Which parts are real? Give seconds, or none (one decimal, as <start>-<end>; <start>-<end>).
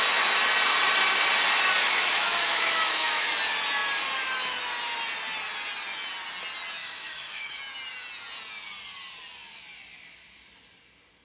0.0-1.8; 3.3-6.8; 7.6-11.2